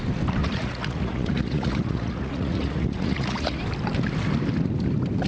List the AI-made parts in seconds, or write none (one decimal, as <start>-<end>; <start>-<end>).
0.4-3.6

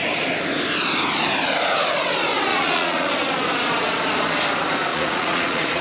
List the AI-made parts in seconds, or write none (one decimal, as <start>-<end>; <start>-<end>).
2.5-3.1; 4.9-5.8

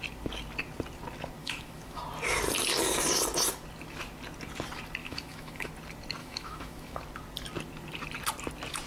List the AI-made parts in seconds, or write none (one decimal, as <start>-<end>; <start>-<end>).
1.4-2.0; 5.0-5.7; 6.2-7.0

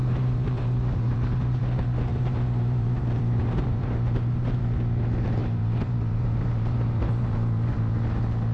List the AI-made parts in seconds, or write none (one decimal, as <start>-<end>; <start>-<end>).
0.0-1.6; 2.1-4.6; 5.4-7.9

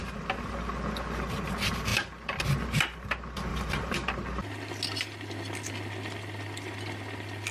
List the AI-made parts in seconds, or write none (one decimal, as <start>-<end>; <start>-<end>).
3.5-4.1

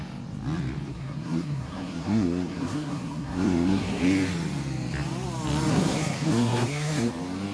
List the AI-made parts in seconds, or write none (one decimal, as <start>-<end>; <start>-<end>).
0.9-4.0; 5.7-7.1

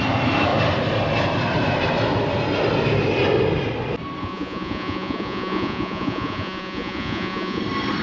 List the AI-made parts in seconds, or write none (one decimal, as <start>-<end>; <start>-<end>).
4.2-7.6